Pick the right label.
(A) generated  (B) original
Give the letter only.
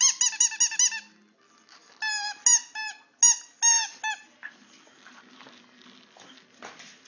B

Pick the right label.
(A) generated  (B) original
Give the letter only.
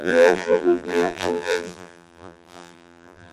A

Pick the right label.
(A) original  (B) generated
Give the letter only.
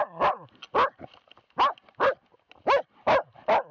A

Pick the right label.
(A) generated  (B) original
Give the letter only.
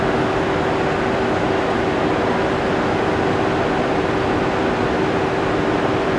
B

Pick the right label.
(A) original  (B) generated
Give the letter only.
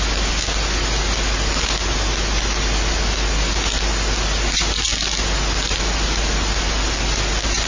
A